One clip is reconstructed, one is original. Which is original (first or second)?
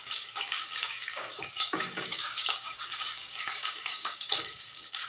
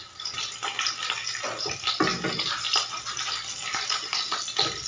second